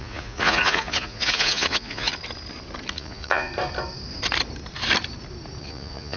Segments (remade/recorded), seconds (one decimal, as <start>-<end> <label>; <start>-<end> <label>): 0.0-2.1 remade; 2.1-2.9 recorded; 2.9-3.5 remade; 3.5-5.6 recorded; 5.6-6.2 remade